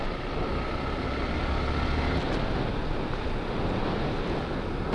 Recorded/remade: recorded